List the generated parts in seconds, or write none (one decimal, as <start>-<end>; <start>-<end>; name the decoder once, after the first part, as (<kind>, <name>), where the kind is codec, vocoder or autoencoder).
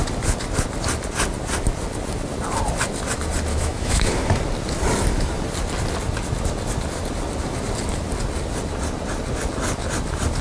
3.5-4.3 (autoencoder, DAC-VAE)